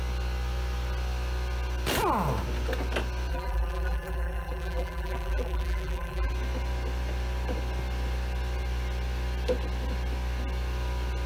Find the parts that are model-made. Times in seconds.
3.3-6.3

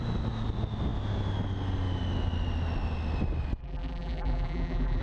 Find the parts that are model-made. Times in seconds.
3.6-5.0

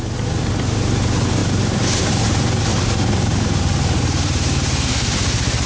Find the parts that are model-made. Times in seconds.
0.0-5.7

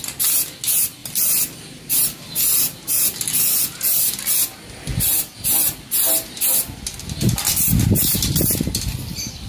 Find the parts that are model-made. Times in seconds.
1.0-4.3; 4.9-9.5

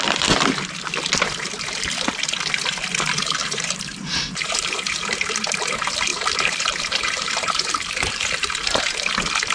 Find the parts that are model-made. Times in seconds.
3.2-5.4; 6.1-8.8